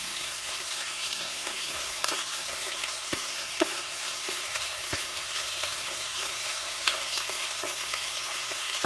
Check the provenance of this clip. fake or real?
fake